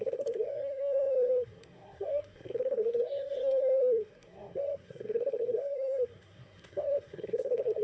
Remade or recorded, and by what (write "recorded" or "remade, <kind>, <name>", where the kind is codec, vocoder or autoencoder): remade, codec, SNAC